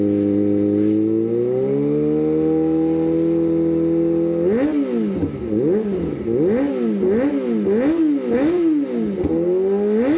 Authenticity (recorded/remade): recorded